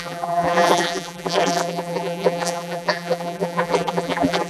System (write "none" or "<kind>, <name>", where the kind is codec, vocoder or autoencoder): vocoder, BigVGAN v2